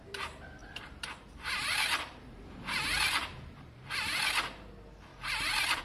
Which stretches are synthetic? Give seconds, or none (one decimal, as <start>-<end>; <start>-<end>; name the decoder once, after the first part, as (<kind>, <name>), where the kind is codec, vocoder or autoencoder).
0.6-3.9 (vocoder, BigVGAN v2); 5.1-5.8